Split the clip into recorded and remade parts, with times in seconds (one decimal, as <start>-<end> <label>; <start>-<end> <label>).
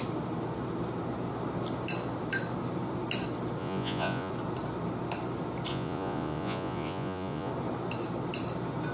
0.0-3.6 recorded; 3.6-4.3 remade; 4.3-5.7 recorded; 5.7-7.5 remade; 7.5-8.9 recorded